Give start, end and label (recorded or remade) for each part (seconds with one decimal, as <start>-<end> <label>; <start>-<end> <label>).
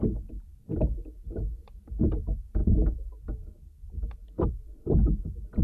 0.0-5.6 recorded